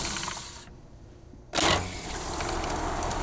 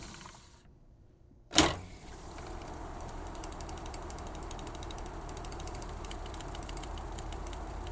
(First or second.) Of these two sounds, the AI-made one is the second